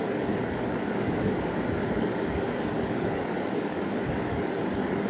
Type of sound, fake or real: fake